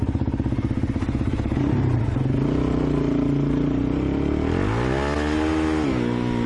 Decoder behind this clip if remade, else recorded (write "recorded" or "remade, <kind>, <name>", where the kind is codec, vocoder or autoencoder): recorded